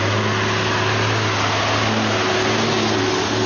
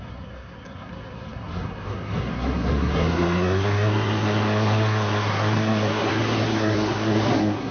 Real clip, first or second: first